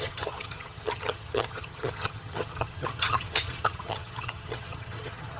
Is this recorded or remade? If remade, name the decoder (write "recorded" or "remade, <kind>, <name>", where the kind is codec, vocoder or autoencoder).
remade, vocoder, HiFi-GAN